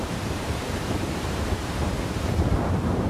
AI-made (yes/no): yes